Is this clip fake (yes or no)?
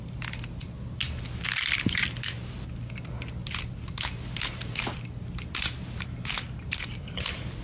no